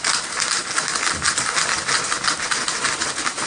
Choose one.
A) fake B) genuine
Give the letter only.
B